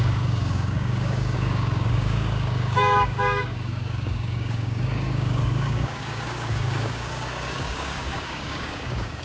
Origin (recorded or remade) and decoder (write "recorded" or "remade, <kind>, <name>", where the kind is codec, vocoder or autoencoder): remade, codec, DAC